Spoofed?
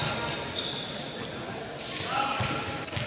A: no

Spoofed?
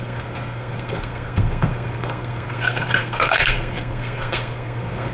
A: yes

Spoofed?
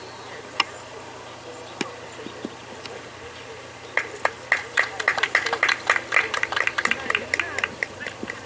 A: no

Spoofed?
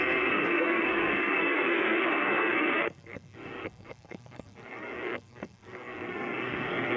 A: yes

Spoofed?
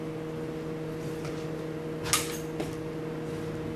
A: no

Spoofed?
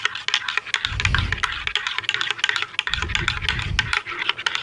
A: no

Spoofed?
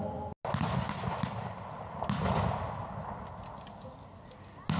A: no